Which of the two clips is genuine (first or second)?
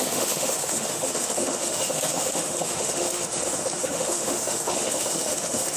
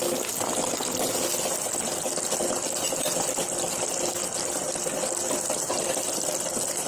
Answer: second